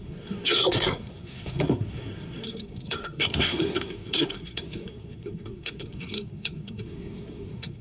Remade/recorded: remade